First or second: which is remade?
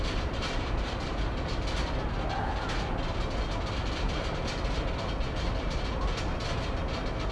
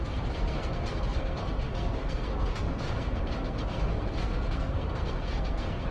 second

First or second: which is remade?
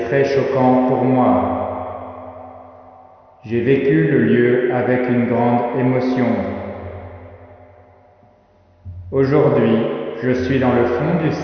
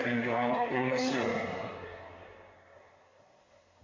second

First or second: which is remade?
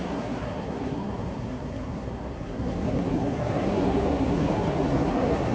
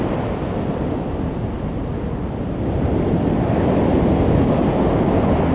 first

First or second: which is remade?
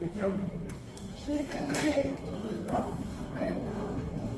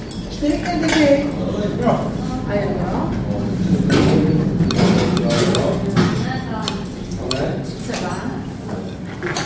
first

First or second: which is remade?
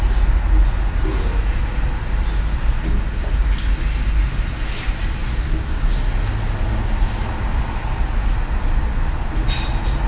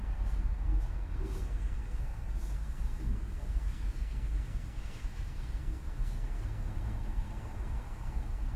second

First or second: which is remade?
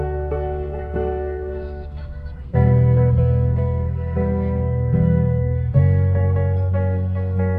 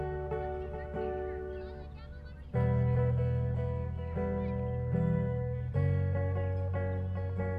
first